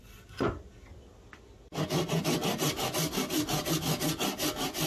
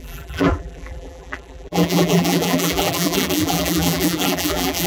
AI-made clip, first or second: second